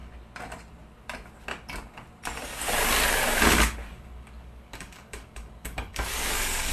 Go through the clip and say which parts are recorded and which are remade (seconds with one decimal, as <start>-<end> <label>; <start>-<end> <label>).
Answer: 0.0-3.1 recorded; 3.1-6.7 remade